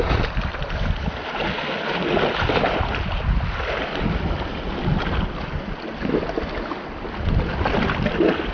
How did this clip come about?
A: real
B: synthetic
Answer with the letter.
A